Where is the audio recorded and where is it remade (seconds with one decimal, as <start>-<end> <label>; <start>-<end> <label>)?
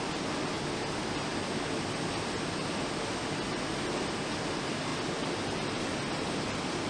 0.0-6.9 recorded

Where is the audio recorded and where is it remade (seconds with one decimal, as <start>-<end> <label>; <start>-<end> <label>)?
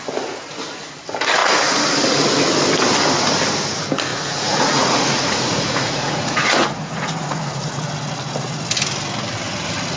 0.0-4.1 recorded; 4.1-7.8 remade; 7.8-10.0 recorded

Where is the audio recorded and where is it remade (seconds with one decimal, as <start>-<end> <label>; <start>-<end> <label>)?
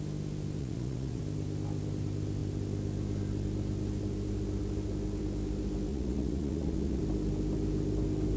0.0-0.6 recorded; 0.6-1.2 remade; 1.2-5.9 recorded; 5.9-7.0 remade; 7.0-8.4 recorded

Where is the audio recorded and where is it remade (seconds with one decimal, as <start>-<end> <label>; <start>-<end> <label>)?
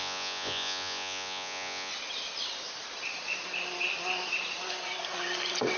0.0-1.9 remade; 1.9-5.8 recorded